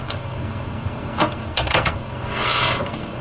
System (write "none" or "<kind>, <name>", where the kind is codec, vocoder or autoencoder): codec, SNAC